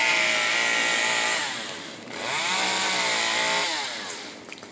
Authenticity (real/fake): real